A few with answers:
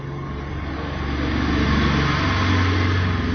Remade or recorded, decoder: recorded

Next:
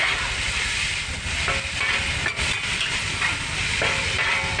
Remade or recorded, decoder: recorded